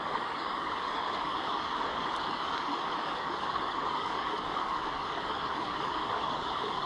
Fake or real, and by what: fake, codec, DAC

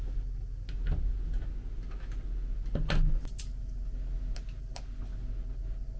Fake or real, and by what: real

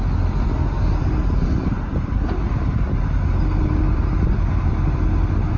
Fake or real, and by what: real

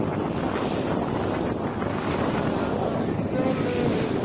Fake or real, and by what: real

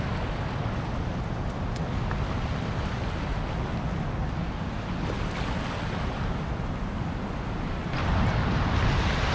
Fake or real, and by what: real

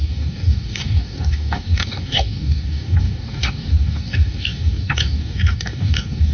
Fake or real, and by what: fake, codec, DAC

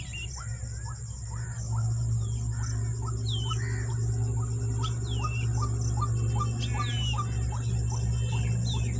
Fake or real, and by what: real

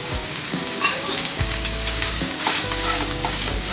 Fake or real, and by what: fake, codec, DAC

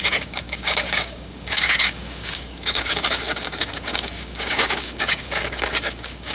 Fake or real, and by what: fake, codec, DAC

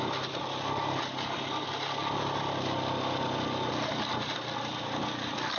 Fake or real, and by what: real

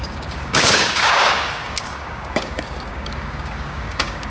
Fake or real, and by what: fake, codec, DAC